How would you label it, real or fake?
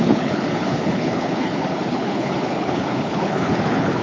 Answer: fake